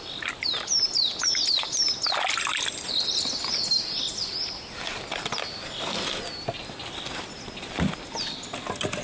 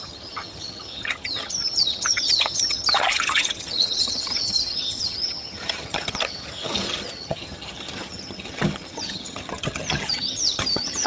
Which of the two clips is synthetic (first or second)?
second